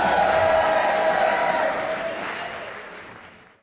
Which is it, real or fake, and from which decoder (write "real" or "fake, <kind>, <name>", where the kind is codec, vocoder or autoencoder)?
real